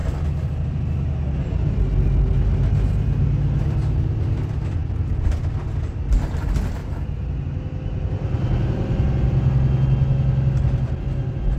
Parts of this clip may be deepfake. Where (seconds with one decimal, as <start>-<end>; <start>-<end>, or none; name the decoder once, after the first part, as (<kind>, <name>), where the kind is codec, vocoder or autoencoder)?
0.0-1.0 (vocoder, BigVGAN v2); 4.8-5.4; 6.8-7.4

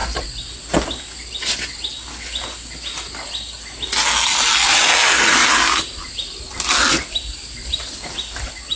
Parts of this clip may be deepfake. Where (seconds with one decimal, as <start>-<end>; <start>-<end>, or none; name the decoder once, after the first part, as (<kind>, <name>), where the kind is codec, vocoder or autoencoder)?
none

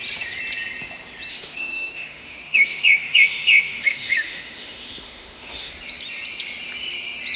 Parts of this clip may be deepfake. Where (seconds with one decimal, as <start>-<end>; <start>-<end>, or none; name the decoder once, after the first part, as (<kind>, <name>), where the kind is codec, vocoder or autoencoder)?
1.3-5.7 (autoencoder, DAC-VAE)

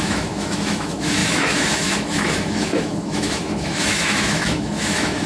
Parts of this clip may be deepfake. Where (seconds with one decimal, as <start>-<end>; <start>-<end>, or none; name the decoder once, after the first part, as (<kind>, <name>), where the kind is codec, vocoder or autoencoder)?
0.0-5.3 (autoencoder, DAC-VAE)